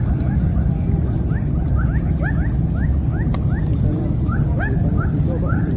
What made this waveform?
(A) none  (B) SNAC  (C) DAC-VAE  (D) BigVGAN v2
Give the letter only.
A